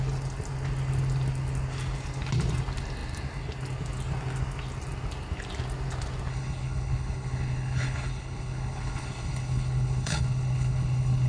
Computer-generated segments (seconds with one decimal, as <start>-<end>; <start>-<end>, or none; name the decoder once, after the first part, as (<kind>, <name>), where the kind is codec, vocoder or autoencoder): 6.3-11.3 (codec, HILCodec)